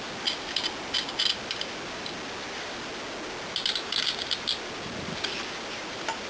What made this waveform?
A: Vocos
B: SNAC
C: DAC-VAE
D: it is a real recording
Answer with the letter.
D